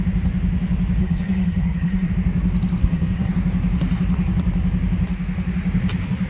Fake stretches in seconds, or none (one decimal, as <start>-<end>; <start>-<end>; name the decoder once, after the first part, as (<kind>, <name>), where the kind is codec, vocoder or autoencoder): 1.0-2.1 (codec, SNAC); 2.8-3.3

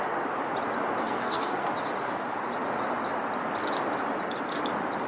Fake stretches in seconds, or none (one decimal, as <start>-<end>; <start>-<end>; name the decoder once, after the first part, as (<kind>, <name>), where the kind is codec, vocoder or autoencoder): 1.0-1.7 (codec, SNAC)